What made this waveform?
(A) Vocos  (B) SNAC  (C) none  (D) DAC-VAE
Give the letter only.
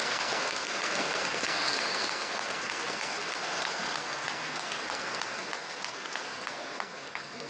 B